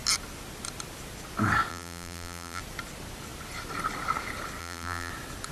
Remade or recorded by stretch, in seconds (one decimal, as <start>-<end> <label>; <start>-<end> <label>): 0.0-1.7 recorded; 1.7-2.6 remade; 2.6-4.6 recorded; 4.6-5.1 remade; 5.1-5.5 recorded